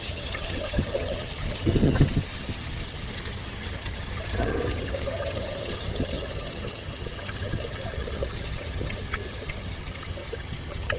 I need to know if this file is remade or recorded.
remade